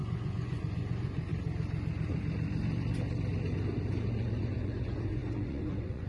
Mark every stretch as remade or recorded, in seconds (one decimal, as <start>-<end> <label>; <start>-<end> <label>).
0.0-1.3 remade; 1.3-4.0 recorded; 4.0-6.1 remade